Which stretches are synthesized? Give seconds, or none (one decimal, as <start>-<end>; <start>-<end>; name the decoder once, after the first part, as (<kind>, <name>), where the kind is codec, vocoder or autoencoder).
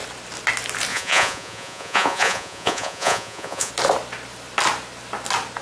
0.9-3.7 (vocoder, Vocos)